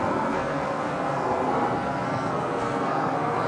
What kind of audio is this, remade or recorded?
remade